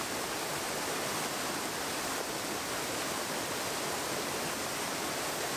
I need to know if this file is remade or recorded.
recorded